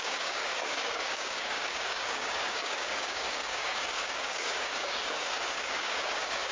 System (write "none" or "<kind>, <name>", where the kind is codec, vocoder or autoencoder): codec, DAC